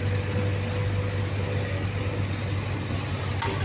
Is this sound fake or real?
real